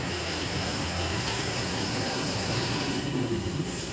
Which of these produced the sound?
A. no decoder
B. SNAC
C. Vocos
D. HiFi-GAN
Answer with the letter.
B